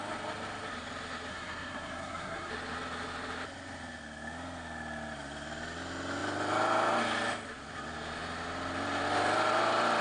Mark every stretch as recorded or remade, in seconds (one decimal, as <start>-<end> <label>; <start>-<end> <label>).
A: 0.0-1.3 recorded; 1.3-2.5 remade; 2.5-10.0 recorded

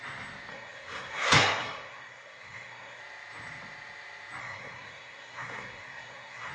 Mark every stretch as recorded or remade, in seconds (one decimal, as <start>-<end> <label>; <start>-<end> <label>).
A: 0.0-0.5 recorded; 0.5-3.0 remade; 3.0-4.4 recorded; 4.4-6.5 remade

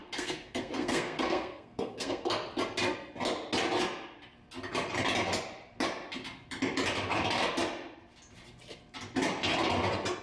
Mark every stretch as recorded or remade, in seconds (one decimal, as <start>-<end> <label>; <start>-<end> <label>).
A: 0.0-2.3 remade; 2.3-10.2 recorded

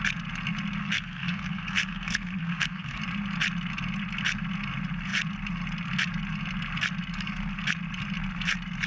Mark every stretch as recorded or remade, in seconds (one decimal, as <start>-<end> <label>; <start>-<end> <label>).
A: 0.0-0.8 recorded; 0.8-3.0 remade; 3.0-8.9 recorded